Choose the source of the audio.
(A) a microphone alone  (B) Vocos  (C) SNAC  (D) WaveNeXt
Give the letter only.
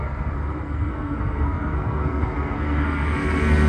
C